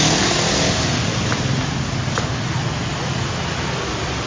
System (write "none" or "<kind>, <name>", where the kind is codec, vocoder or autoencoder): none